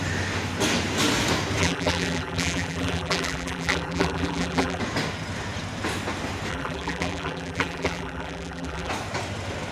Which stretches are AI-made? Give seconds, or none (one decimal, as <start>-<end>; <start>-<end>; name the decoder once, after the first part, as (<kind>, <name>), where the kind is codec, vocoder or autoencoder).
1.6-4.8 (vocoder, BigVGAN v2); 6.5-8.9